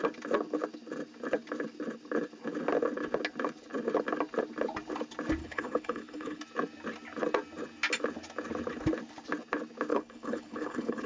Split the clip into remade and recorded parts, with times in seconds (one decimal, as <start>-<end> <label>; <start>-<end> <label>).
0.0-5.4 recorded; 5.4-6.4 remade; 6.4-9.9 recorded; 9.9-11.1 remade